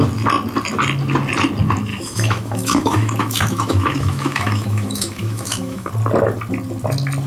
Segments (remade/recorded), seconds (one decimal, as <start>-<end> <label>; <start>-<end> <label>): 0.0-1.9 recorded; 1.9-5.9 remade; 5.9-7.3 recorded